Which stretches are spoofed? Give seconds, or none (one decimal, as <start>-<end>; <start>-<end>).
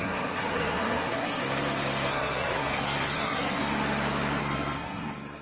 0.0-1.4; 2.1-3.6; 4.4-5.4